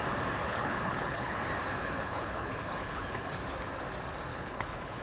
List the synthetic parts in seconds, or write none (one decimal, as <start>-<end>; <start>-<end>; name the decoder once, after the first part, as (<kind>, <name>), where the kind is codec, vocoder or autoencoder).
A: 0.4-1.4 (codec, HILCodec); 1.8-3.3; 4.3-5.0